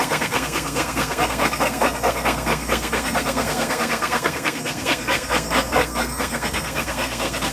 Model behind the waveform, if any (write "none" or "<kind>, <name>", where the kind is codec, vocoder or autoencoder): codec, SNAC